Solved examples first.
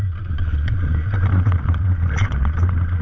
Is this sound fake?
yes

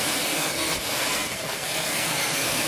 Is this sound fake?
yes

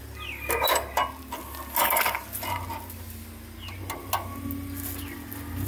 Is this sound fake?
no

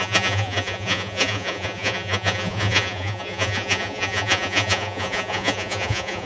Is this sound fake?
yes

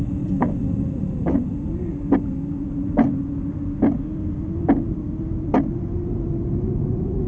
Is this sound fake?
no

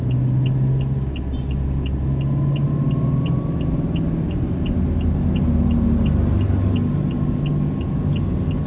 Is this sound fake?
no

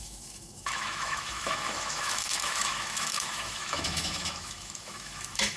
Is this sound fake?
yes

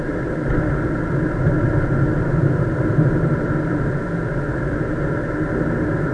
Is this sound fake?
no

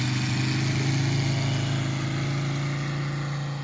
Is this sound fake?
no